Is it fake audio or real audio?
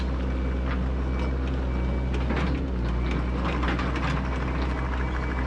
real